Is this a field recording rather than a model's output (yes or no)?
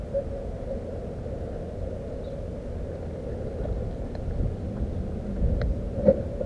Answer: yes